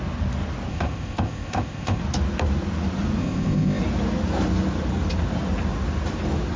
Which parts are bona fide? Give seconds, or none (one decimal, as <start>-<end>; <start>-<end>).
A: 0.0-0.7; 2.0-3.2; 3.8-6.6